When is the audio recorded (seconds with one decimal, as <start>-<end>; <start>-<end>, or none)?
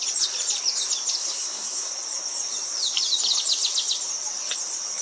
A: 0.0-1.2; 1.9-5.0